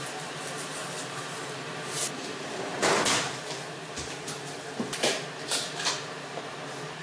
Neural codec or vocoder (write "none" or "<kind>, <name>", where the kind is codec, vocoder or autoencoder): vocoder, BigVGAN v2